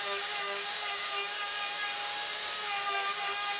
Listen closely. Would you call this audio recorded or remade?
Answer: remade